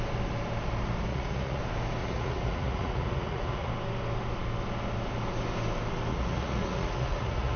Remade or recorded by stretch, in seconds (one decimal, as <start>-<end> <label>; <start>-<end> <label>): 0.0-1.1 recorded; 1.1-1.6 remade; 1.6-2.0 recorded; 2.0-3.7 remade; 3.7-6.1 recorded; 6.1-7.6 remade